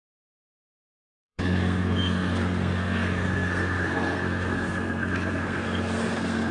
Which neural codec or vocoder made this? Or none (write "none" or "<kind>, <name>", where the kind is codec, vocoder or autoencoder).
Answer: codec, SNAC